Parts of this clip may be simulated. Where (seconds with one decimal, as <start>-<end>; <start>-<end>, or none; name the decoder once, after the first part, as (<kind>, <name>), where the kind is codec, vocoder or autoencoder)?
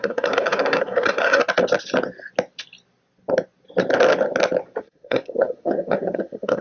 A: 0.0-1.4 (codec, SNAC); 4.8-6.6